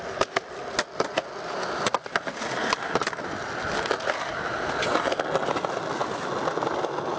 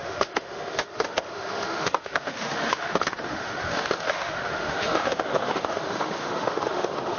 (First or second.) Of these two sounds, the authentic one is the first